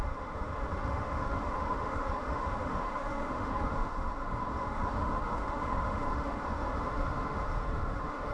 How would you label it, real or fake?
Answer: fake